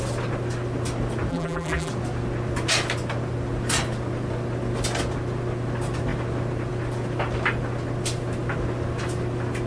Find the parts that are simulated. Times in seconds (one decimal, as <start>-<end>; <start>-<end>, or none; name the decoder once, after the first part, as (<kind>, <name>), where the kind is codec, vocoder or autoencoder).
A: 1.3-1.9 (vocoder, BigVGAN v2)